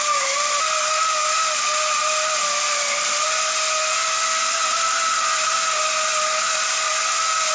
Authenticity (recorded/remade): recorded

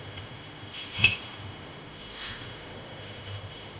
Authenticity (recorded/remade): remade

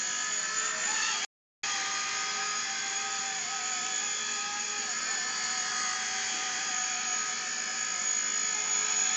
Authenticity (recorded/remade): recorded